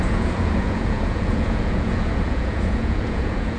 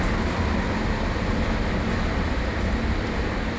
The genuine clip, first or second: second